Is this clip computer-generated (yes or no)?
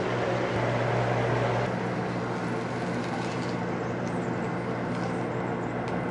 no